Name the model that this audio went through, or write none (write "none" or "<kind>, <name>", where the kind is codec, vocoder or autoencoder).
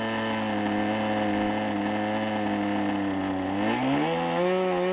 none